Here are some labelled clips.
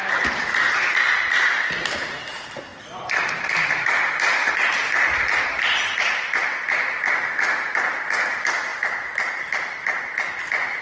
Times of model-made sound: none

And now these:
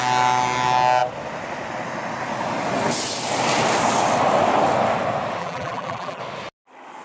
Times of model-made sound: 5.4-6.2

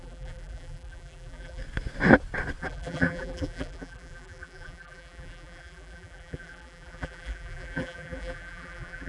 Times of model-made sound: 0.0-1.6; 2.6-9.1

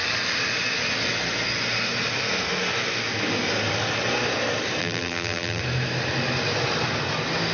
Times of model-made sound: 4.8-5.6

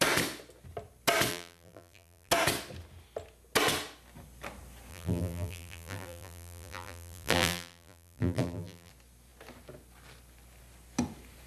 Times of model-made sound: 1.3-2.3; 4.9-8.9

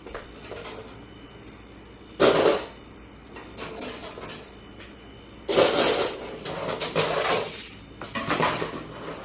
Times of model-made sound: none

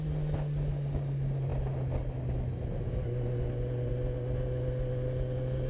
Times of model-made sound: none